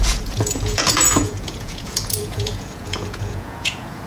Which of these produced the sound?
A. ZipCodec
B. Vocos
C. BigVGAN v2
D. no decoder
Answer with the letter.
B